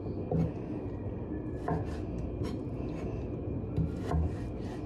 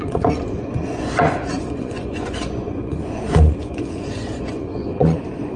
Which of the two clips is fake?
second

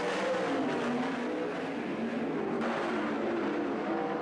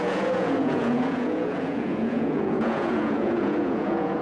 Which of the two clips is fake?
second